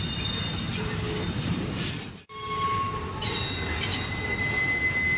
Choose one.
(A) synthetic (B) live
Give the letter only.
B